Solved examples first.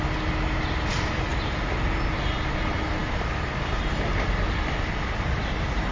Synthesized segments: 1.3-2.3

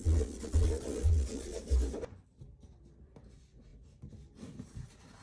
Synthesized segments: 0.0-1.6

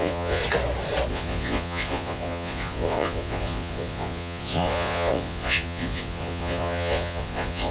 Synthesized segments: 0.0-0.4; 1.1-7.7

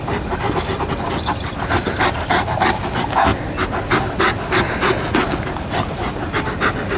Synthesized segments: none

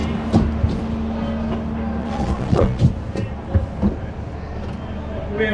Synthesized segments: 2.0-2.8

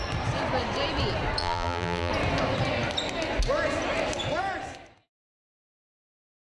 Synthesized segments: 1.4-2.1

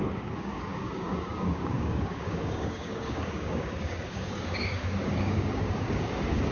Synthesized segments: 0.0-6.5

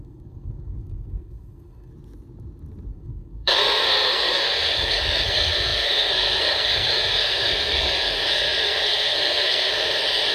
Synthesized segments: 0.0-1.9; 2.9-10.3